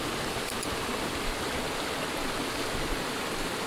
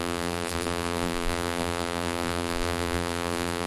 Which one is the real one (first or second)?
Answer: first